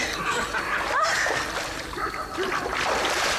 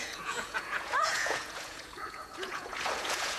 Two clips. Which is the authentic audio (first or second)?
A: first